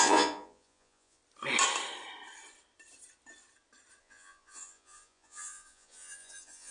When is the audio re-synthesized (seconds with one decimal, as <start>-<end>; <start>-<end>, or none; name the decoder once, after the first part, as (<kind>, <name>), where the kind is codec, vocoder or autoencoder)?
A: 0.0-1.2 (vocoder, Vocos); 4.0-6.7